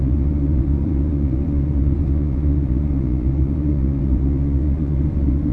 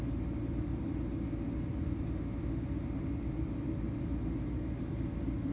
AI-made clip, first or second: first